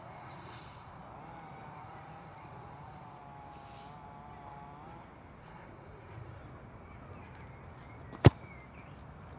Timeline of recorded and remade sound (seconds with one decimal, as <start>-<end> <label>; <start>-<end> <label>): 0.0-1.0 remade; 1.0-1.7 recorded; 1.7-3.2 remade; 3.2-5.4 recorded; 5.4-6.4 remade; 6.4-9.4 recorded